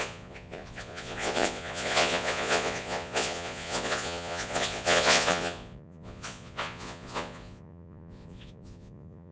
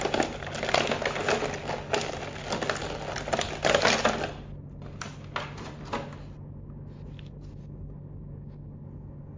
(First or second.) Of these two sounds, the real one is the second